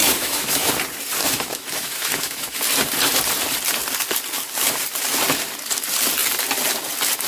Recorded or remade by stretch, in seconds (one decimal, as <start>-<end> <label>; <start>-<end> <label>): 0.0-0.7 remade; 0.7-1.2 recorded; 1.2-2.6 remade; 2.6-7.3 recorded